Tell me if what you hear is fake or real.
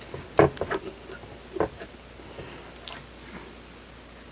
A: real